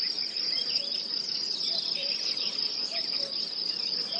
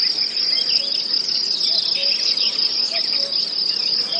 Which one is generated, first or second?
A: first